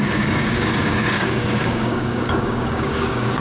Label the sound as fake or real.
fake